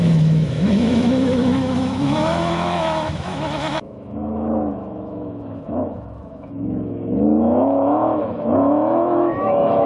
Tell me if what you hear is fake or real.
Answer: fake